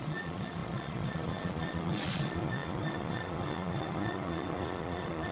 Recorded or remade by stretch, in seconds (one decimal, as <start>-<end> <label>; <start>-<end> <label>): 0.0-5.3 remade